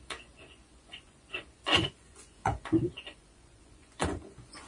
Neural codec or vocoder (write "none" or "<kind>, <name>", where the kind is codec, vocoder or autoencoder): vocoder, Vocos